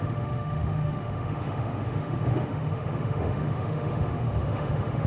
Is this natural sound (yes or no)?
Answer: no